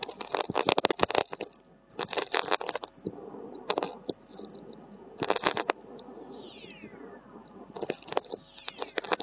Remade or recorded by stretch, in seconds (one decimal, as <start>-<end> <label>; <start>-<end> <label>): 0.0-9.2 recorded